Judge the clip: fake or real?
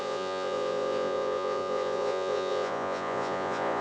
fake